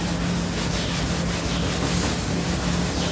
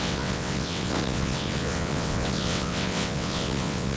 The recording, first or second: first